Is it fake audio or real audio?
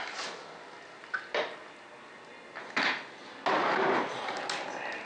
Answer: real